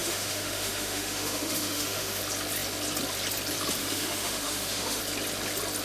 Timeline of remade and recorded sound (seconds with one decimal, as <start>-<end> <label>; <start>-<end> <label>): 0.0-2.2 remade; 2.2-3.8 recorded; 3.8-5.0 remade; 5.0-5.8 recorded